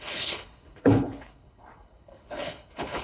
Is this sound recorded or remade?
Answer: remade